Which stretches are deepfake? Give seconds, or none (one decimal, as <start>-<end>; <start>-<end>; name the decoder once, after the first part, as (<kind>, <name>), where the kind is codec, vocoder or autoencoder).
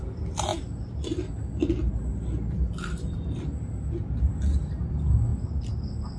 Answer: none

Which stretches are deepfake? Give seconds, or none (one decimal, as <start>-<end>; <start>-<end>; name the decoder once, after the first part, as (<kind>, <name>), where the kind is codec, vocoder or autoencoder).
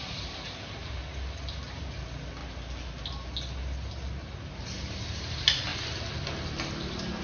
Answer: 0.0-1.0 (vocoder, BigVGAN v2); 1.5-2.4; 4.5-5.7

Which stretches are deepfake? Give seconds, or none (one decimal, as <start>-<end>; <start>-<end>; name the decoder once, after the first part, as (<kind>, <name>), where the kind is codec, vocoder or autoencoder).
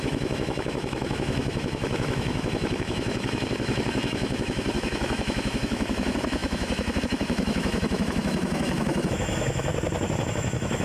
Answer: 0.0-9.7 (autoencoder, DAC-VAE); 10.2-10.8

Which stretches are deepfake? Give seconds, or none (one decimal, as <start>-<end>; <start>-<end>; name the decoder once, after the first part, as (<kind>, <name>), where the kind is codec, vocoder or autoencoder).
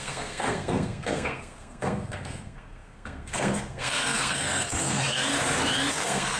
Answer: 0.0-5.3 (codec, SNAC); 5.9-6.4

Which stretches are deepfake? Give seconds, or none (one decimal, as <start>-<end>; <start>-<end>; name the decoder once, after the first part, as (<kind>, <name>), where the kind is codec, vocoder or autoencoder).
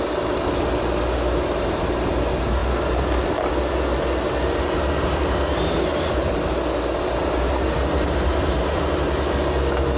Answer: none